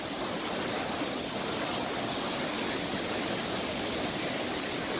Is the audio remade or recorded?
recorded